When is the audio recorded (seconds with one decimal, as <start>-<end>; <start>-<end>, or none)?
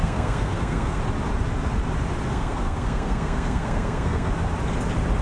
1.0-2.3; 4.3-5.2